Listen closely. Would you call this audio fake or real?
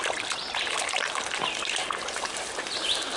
real